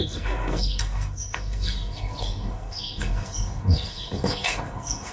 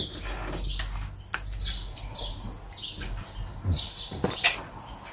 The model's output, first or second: first